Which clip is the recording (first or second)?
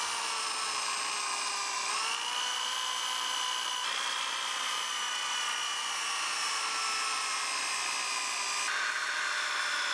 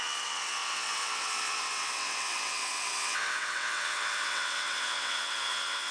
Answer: first